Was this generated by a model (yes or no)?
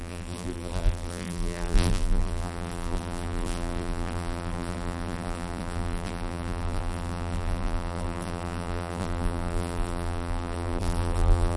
yes